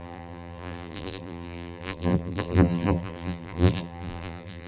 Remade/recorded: remade